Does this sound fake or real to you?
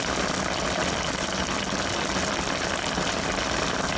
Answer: real